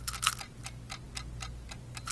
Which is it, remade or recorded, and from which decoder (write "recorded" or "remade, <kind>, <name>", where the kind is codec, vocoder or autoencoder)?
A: recorded